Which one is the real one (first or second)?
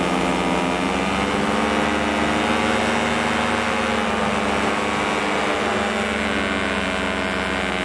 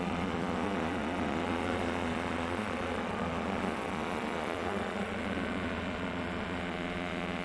first